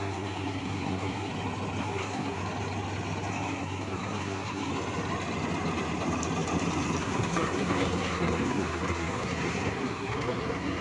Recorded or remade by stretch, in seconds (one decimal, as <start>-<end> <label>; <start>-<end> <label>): 0.0-1.3 remade; 1.3-1.8 recorded; 1.8-2.4 remade; 2.4-3.3 recorded; 3.3-4.7 remade; 4.7-7.0 recorded; 7.0-10.8 remade